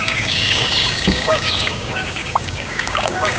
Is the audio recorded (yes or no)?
no